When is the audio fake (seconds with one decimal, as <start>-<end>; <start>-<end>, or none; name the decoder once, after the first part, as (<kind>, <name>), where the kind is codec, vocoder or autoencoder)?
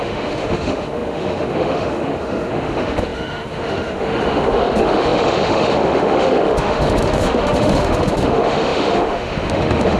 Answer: 0.0-10.0 (autoencoder, DAC-VAE)